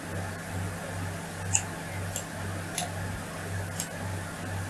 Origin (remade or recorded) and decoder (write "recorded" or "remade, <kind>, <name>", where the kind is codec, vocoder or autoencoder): recorded